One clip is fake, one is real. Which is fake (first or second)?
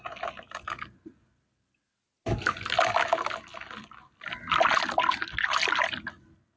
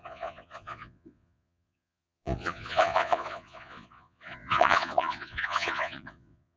second